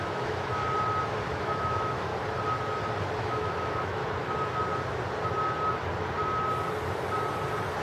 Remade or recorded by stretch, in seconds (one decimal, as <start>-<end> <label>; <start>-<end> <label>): 0.0-0.6 remade; 0.6-1.2 recorded; 1.2-2.1 remade; 2.1-3.2 recorded; 3.2-4.0 remade; 4.0-7.8 recorded